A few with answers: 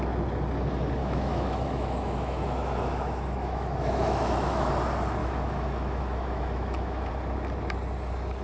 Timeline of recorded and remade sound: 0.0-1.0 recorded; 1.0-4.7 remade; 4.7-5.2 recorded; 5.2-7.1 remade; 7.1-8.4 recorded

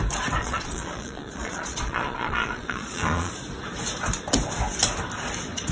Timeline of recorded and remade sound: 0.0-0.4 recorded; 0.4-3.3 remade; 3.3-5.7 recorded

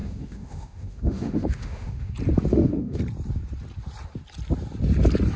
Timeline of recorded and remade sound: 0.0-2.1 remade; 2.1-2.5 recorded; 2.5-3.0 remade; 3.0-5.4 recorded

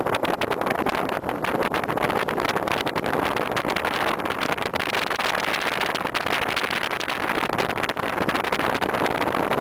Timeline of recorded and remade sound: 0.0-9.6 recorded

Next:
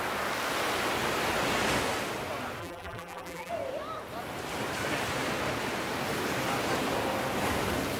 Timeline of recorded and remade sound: 0.0-2.6 recorded; 2.6-3.5 remade; 3.5-8.0 recorded

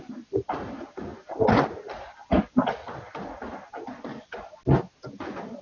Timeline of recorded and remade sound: 0.0-5.6 recorded